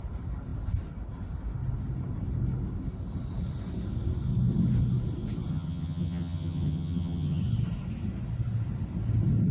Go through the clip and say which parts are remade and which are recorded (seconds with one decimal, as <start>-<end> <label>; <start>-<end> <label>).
0.0-5.5 recorded; 5.5-7.4 remade; 7.4-9.5 recorded